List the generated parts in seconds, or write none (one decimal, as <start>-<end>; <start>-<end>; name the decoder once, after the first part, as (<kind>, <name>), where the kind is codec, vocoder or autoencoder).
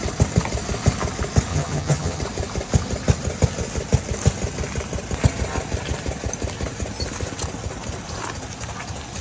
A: 1.5-2.2 (vocoder, HiFi-GAN)